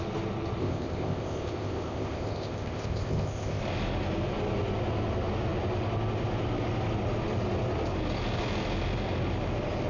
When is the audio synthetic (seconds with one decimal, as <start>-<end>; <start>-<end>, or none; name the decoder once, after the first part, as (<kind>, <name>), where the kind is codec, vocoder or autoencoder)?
0.6-3.6 (codec, ZipCodec)